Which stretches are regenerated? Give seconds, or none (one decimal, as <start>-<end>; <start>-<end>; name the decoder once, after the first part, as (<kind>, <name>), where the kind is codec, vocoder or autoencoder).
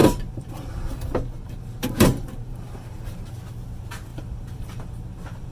0.0-3.3 (vocoder, BigVGAN v2); 4.1-5.5